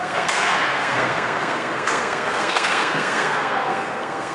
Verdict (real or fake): fake